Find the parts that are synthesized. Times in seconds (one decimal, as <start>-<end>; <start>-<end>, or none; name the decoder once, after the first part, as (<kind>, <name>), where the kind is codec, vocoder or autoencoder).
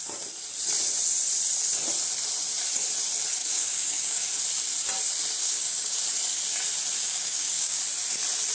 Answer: 3.4-4.4 (codec, DAC); 5.4-6.0; 7.0-7.8